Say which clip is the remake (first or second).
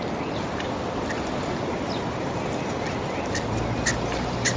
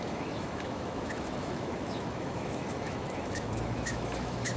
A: second